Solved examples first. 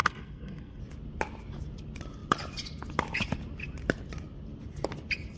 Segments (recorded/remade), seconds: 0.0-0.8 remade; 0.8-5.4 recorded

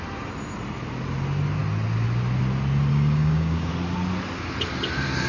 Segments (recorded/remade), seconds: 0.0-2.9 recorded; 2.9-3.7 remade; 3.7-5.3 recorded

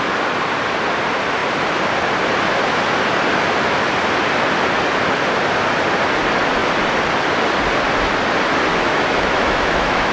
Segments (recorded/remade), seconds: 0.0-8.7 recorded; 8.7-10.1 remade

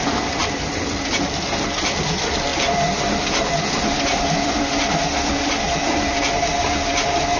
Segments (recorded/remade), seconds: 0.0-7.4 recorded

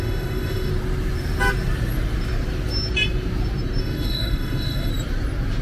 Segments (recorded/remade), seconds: 0.0-0.7 remade; 0.7-3.8 recorded; 3.8-4.9 remade; 4.9-5.6 recorded

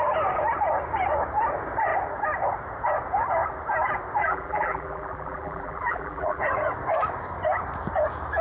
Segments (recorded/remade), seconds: 0.0-4.2 recorded; 4.2-6.4 remade; 6.4-8.4 recorded